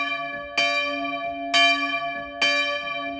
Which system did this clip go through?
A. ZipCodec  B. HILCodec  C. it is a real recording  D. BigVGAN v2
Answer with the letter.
C